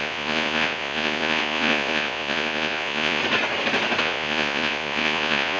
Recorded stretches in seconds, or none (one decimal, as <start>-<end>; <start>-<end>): 3.2-4.0